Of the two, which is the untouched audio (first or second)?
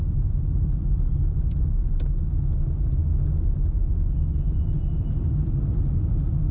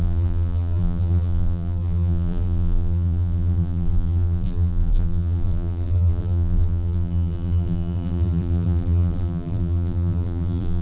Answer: first